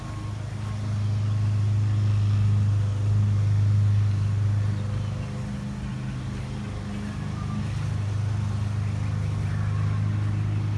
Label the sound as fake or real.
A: real